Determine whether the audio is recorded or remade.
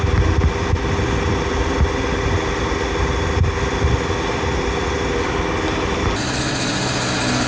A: recorded